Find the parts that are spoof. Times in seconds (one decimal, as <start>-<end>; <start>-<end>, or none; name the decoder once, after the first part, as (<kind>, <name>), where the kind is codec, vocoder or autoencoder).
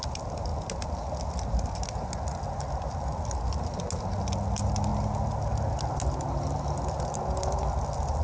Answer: none